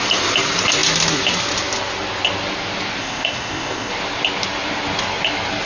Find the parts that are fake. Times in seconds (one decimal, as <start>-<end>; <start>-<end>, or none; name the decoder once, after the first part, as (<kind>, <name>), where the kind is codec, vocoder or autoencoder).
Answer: 3.0-3.9 (codec, ZipCodec)